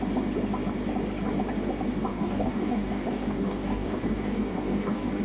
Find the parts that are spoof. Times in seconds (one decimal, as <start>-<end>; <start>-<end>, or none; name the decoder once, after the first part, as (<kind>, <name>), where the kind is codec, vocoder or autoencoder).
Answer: 2.1-5.2 (codec, DAC)